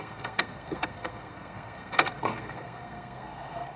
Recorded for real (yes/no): no